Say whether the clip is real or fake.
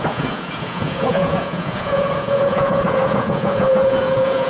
fake